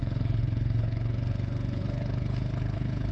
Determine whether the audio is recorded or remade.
remade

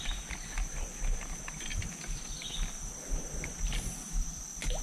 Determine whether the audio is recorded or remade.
recorded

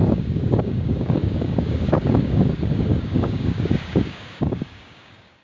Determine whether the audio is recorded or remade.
remade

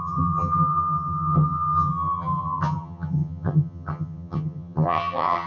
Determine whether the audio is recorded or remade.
remade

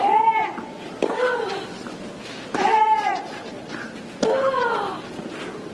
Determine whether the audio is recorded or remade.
recorded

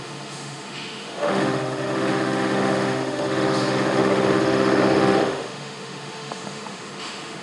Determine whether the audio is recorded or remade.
remade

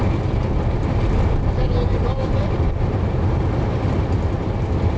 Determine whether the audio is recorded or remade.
recorded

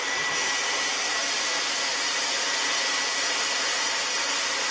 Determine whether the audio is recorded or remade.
remade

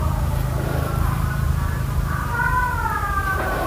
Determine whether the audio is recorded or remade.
remade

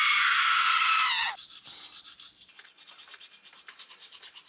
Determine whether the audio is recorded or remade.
recorded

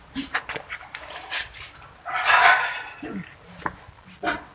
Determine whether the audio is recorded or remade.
recorded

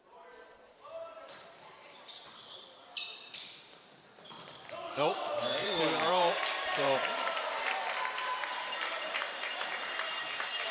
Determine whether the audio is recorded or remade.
remade